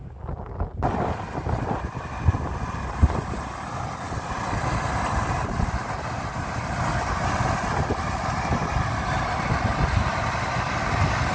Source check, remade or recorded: recorded